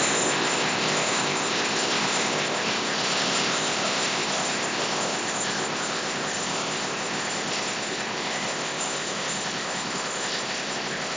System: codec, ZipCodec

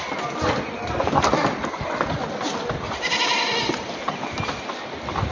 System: none